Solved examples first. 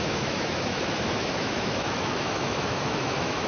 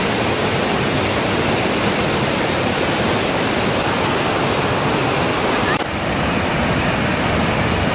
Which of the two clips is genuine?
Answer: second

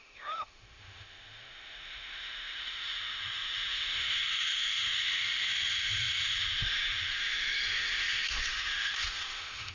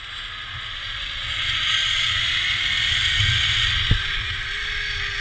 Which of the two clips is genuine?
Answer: second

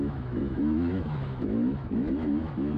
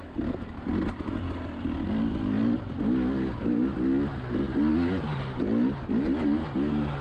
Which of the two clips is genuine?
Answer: second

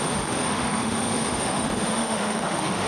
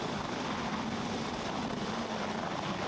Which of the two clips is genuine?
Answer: second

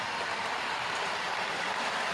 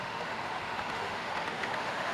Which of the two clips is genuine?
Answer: first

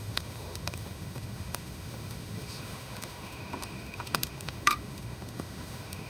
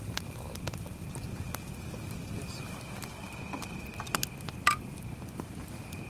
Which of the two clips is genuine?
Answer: second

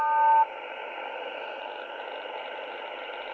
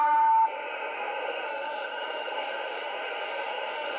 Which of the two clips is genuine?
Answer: first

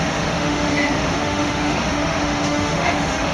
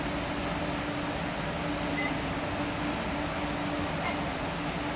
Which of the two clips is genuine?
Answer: second